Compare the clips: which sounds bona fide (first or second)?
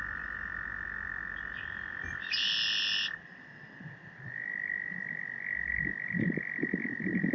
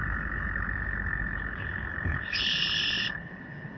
first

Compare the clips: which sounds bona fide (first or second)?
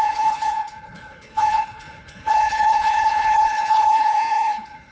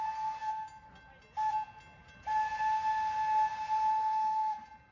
second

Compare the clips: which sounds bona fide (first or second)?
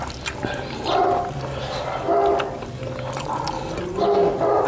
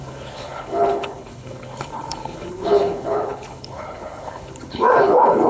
first